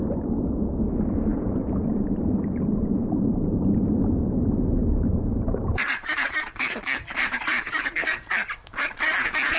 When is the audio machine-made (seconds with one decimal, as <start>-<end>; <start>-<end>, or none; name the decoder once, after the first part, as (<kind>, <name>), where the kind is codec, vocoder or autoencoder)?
1.3-3.9 (vocoder, BigVGAN v2); 4.8-8.3